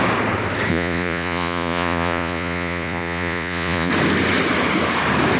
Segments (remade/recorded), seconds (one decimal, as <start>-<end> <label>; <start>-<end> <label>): 0.0-0.7 recorded; 0.7-3.9 remade; 3.9-5.4 recorded